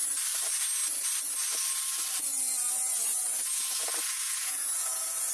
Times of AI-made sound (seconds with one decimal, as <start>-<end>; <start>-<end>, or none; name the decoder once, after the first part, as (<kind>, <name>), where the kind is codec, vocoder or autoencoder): 3.1-5.3 (vocoder, Vocos)